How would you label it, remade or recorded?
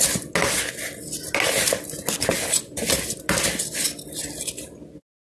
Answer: recorded